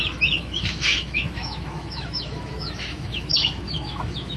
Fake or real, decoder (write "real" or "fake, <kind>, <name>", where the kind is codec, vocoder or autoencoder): fake, autoencoder, DAC-VAE